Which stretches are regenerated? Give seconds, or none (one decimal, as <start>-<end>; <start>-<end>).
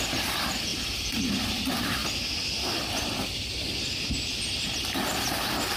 0.7-1.3